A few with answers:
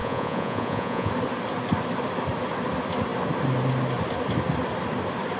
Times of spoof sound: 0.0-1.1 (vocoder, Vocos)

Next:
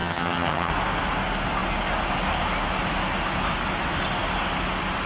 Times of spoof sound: 0.0-0.7 (vocoder, HiFi-GAN)

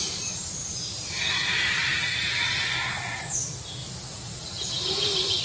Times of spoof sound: 0.6-3.2 (vocoder, BigVGAN v2); 3.8-5.4

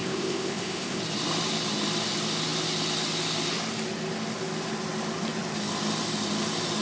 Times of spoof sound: 0.0-1.0 (codec, ZipCodec)

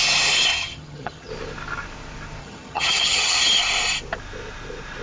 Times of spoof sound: 0.5-1.3 (vocoder, HiFi-GAN); 2.4-3.4